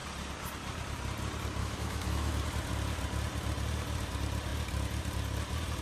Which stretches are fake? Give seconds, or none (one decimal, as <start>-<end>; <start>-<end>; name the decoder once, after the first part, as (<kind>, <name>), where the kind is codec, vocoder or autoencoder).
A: 1.6-2.3 (autoencoder, DAC-VAE)